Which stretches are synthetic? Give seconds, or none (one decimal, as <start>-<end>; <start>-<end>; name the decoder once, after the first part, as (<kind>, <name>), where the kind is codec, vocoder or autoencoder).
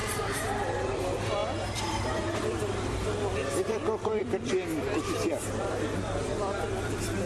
0.0-7.3 (vocoder, BigVGAN v2)